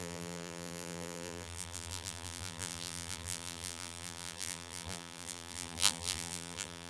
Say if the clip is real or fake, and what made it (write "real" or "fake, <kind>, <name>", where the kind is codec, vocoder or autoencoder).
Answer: fake, vocoder, BigVGAN v2